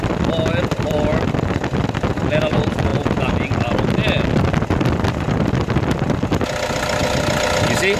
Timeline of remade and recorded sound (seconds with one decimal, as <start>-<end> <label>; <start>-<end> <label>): 0.0-8.0 recorded